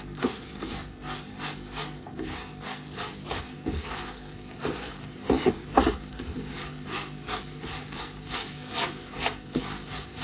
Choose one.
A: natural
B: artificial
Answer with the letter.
B